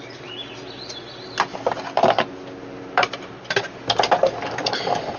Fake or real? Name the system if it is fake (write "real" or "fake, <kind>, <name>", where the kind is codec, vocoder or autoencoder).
real